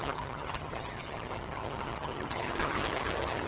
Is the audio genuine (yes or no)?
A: no